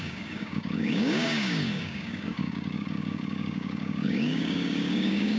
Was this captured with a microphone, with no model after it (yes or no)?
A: no